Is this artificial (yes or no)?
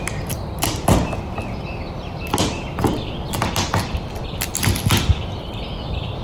no